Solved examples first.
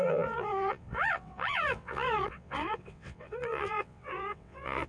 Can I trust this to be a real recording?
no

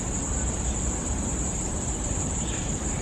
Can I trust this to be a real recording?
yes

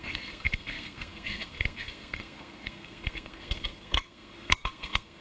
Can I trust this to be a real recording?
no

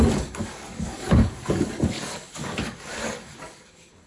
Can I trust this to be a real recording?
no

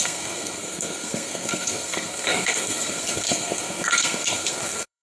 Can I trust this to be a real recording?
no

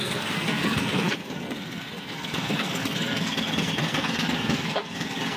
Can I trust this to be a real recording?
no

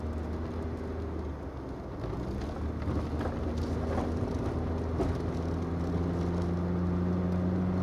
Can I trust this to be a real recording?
yes